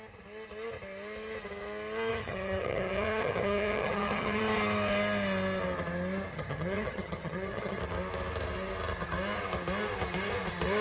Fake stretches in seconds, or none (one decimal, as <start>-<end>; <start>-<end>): 2.1-4.4; 6.3-7.8